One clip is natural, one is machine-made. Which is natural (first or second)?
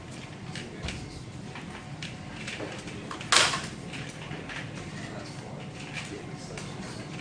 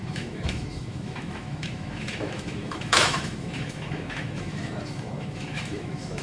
first